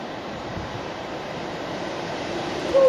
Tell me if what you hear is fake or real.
fake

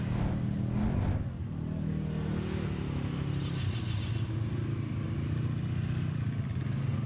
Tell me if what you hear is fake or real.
real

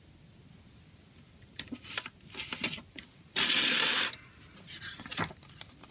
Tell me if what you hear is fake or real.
real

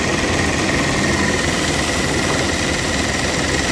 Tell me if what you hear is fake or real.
real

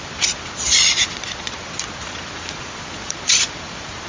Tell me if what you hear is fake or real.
fake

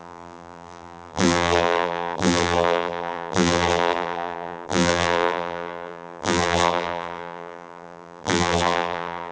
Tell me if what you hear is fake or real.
fake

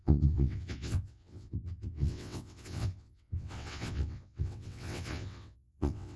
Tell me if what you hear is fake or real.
fake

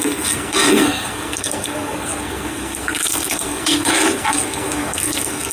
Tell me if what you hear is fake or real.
fake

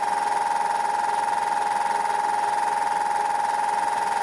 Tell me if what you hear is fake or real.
real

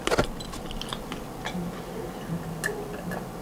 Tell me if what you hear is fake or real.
real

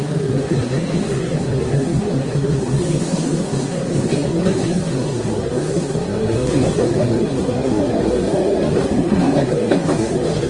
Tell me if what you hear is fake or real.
fake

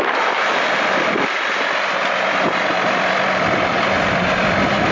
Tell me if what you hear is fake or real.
fake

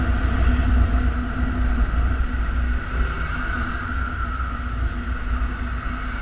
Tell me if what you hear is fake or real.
real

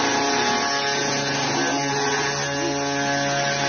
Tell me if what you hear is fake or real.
real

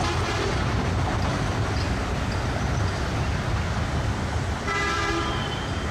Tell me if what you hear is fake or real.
real